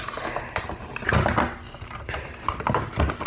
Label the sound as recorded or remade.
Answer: recorded